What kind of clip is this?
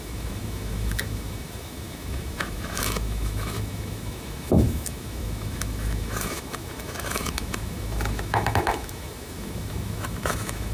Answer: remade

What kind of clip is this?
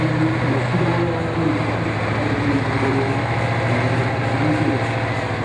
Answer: recorded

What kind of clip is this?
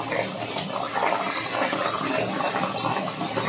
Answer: recorded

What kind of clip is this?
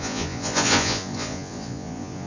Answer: remade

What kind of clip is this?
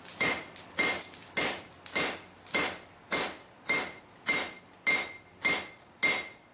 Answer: recorded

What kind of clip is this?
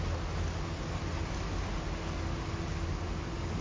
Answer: recorded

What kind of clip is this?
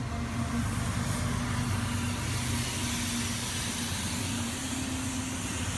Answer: recorded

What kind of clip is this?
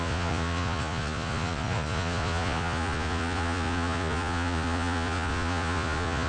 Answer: remade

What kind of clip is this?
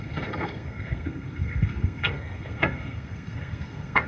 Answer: remade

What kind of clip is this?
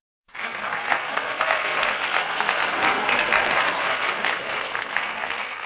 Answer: remade